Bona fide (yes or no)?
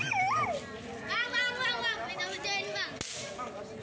yes